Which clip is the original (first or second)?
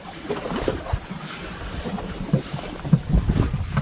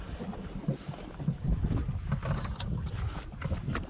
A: second